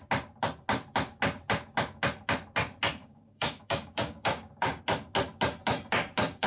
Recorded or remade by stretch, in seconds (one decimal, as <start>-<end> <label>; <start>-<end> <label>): 0.0-3.0 recorded; 3.0-4.8 remade; 4.8-6.5 recorded